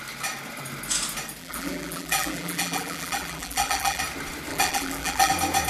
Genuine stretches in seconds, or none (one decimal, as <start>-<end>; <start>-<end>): 0.0-1.4; 4.0-4.5; 5.3-5.7